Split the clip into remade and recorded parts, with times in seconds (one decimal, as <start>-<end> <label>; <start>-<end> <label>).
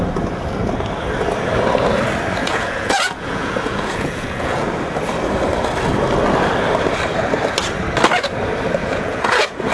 0.0-2.4 recorded; 2.4-4.7 remade; 4.7-8.8 recorded; 8.8-9.7 remade